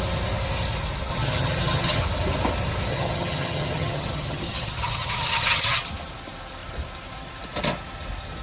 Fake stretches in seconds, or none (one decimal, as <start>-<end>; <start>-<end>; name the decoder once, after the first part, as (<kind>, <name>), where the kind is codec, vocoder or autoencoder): 1.1-2.0 (vocoder, HiFi-GAN); 2.9-5.8